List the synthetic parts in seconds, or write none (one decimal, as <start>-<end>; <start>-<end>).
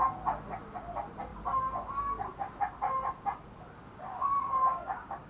4.2-5.3